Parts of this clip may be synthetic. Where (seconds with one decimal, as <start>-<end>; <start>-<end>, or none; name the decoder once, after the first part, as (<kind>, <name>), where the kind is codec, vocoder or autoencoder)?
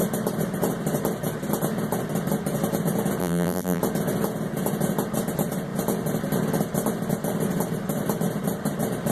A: 3.2-3.8 (vocoder, BigVGAN v2)